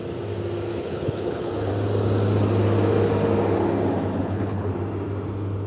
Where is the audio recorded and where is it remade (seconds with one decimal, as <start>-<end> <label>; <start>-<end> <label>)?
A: 0.0-0.7 recorded; 0.7-1.7 remade; 1.7-4.2 recorded; 4.2-4.7 remade; 4.7-5.7 recorded